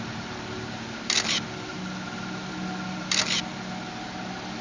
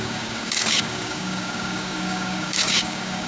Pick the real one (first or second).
first